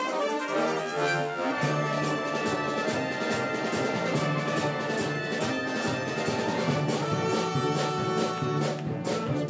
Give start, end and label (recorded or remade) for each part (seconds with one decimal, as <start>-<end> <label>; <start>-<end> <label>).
0.0-0.8 recorded; 0.8-1.5 remade; 1.5-9.5 recorded